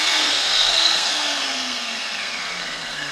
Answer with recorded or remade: remade